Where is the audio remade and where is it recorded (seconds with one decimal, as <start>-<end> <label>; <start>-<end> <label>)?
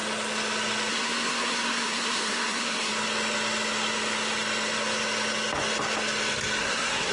0.0-0.9 recorded; 0.9-2.9 remade; 2.9-6.6 recorded; 6.6-7.1 remade